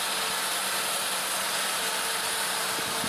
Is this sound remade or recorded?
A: recorded